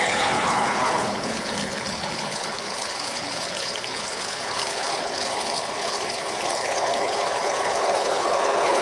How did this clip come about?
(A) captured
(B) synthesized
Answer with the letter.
B